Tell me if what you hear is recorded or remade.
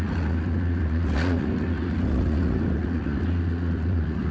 remade